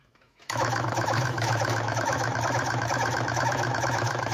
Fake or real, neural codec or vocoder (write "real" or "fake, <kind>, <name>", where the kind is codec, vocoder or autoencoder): fake, autoencoder, DAC-VAE